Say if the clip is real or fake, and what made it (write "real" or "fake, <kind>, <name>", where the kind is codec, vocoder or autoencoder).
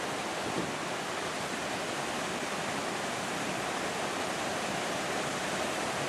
real